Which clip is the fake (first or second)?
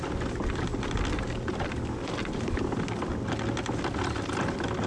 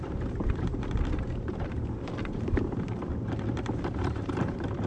second